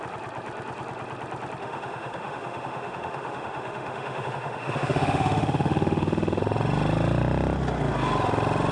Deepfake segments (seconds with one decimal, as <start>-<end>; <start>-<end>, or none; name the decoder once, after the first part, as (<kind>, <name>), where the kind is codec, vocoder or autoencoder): 1.6-6.4 (autoencoder, DAC-VAE)